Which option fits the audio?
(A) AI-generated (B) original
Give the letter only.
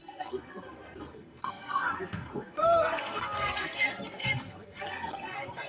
A